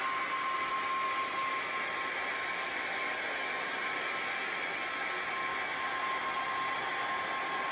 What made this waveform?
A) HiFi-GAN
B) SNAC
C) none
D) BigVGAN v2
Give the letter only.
C